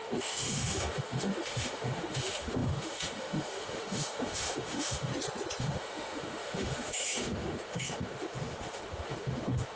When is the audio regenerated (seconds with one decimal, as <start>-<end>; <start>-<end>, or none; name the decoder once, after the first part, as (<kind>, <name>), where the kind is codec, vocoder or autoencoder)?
0.0-5.1 (autoencoder, DAC-VAE); 5.6-9.8